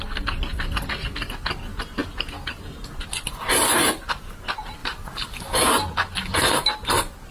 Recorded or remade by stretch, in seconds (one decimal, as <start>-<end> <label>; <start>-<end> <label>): 0.0-4.8 recorded; 4.8-5.7 remade; 5.7-7.3 recorded